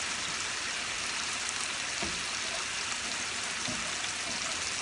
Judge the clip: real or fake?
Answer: real